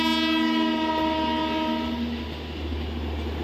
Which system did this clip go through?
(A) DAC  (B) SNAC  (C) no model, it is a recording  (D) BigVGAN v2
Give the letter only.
C